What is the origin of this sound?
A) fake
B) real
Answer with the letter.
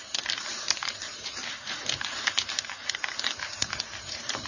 A